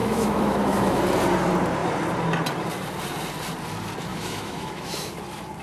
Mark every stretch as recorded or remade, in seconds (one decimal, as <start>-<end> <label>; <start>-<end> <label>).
0.0-1.0 remade; 1.0-4.1 recorded; 4.1-5.1 remade; 5.1-5.6 recorded